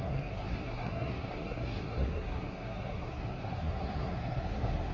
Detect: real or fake fake